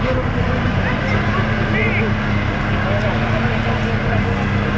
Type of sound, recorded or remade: recorded